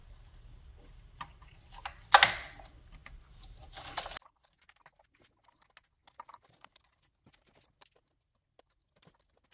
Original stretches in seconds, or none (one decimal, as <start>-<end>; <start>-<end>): 0.0-9.5